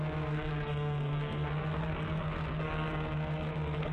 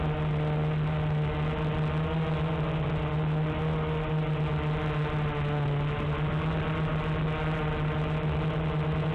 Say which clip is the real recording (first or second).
second